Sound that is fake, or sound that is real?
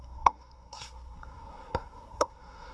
fake